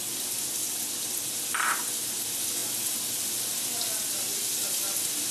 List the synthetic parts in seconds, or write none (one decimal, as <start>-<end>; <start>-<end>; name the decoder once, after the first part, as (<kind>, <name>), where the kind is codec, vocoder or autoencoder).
none